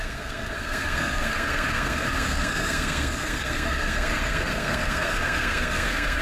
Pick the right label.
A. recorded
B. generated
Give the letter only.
B